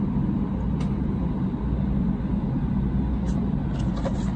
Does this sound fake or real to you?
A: real